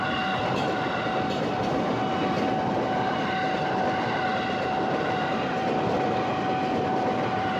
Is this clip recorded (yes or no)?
no